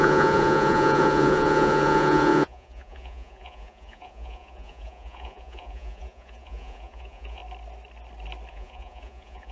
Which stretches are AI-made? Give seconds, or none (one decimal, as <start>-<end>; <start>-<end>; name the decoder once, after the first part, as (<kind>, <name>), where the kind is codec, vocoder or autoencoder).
0.0-7.4 (vocoder, Vocos); 8.5-9.5